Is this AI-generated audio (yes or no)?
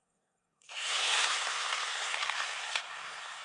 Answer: yes